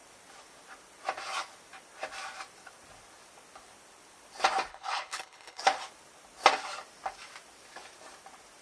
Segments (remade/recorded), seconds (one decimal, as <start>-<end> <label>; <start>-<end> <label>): 0.0-4.7 recorded; 4.7-5.6 remade; 5.6-8.6 recorded